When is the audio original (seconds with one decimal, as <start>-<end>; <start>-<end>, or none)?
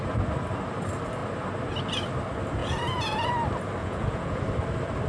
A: 0.0-2.6; 3.3-3.8; 4.4-5.1